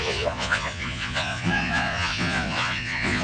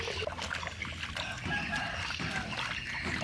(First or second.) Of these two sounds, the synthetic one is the first